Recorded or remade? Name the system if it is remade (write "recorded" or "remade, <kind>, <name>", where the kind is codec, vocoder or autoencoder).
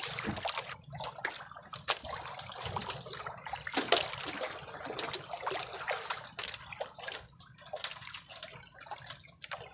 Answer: recorded